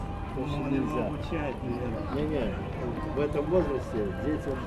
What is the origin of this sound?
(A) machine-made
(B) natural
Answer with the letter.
B